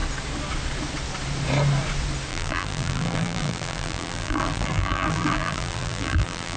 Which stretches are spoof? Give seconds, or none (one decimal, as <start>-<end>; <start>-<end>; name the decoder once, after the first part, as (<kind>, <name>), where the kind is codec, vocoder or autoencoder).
2.3-6.6 (vocoder, BigVGAN v2)

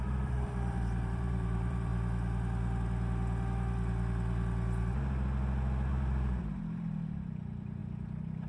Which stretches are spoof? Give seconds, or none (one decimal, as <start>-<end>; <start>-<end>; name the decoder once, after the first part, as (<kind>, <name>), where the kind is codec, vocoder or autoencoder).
0.0-1.9 (vocoder, BigVGAN v2); 5.9-8.5

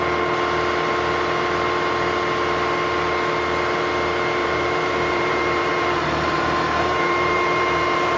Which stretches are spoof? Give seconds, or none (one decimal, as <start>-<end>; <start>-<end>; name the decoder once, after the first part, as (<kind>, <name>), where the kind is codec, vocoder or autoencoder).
4.4-8.2 (vocoder, BigVGAN v2)

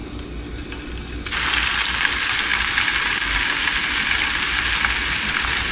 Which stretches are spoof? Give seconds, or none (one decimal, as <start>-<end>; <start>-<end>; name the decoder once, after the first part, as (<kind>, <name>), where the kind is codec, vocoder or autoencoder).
none

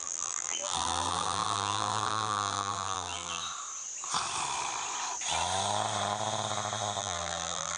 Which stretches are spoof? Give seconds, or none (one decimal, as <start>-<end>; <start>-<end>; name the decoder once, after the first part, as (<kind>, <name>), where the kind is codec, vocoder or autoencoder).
0.0-3.4 (vocoder, BigVGAN v2); 7.0-7.8